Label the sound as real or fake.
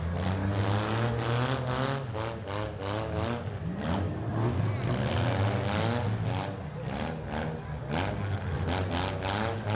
real